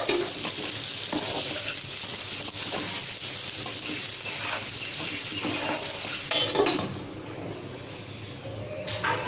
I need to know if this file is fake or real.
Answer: real